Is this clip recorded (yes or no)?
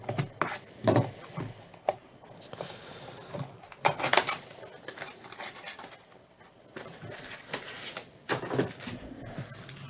yes